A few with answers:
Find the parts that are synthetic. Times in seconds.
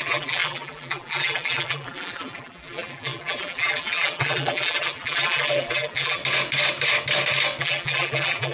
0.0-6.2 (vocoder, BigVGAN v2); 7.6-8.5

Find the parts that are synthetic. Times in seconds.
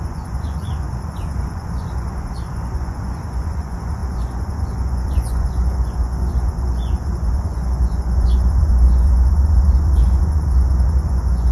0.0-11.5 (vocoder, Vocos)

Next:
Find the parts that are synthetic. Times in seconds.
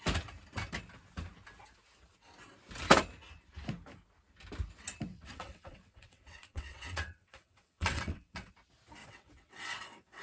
5.1-8.5 (vocoder, WaveNeXt); 9.0-10.2